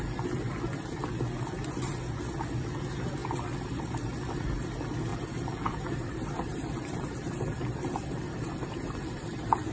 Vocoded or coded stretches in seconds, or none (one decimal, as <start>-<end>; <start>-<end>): 5.1-9.7